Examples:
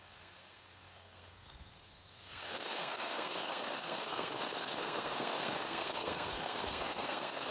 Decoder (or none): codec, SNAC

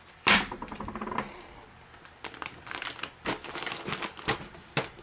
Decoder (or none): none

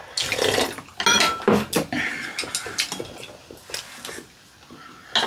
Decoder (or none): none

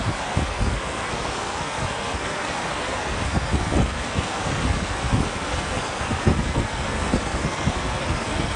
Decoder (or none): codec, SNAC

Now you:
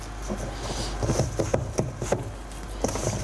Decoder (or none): none